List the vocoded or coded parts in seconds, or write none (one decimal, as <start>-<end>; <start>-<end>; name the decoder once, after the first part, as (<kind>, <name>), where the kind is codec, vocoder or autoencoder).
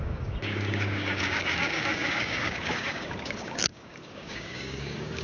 0.0-5.2 (codec, DAC)